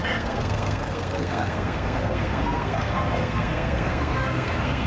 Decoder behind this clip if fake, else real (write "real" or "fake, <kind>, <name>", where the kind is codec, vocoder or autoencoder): fake, codec, SNAC